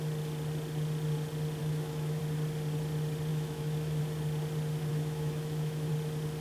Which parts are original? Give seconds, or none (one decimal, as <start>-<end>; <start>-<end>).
0.0-1.6; 2.2-3.3; 4.0-4.9; 5.9-6.4